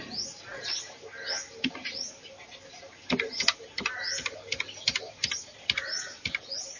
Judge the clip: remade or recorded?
recorded